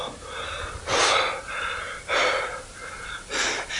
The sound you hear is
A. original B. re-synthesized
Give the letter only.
A